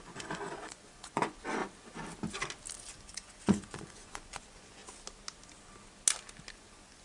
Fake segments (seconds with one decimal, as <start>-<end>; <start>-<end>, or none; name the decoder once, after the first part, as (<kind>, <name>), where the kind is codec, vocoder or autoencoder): 0.0-1.6 (vocoder, Vocos); 2.9-4.8; 6.5-7.0